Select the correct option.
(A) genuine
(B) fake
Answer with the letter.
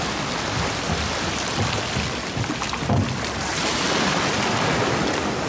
A